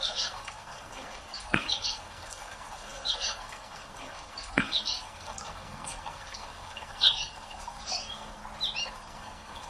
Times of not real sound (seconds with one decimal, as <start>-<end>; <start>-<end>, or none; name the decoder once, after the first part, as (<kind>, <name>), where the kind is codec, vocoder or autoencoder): 0.0-8.4 (codec, SNAC); 8.9-9.7